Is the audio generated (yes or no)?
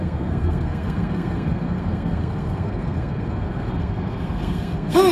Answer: yes